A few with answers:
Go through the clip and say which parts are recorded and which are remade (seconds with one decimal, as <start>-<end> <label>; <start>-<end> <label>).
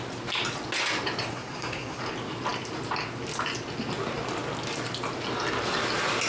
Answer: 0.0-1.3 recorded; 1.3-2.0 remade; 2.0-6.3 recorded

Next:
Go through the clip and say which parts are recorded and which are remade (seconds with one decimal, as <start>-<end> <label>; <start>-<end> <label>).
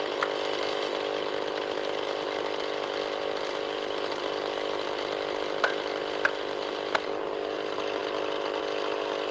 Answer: 0.0-9.3 recorded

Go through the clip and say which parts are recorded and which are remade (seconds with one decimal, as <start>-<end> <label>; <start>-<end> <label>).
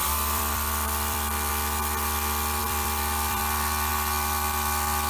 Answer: 0.0-1.5 remade; 1.5-2.6 recorded; 2.6-3.4 remade; 3.4-5.1 recorded